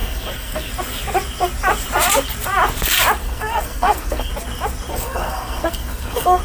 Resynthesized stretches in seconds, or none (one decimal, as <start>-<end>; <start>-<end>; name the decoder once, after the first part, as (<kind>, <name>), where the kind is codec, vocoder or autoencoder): 0.0-0.7 (codec, SNAC); 3.2-4.3; 4.9-6.4